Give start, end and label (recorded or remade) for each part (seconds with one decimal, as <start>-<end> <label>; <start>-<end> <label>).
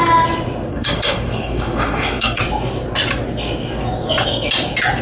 0.0-0.7 recorded; 0.7-2.4 remade; 2.4-5.0 recorded